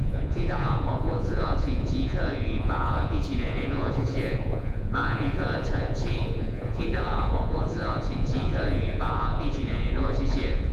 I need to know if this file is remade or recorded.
remade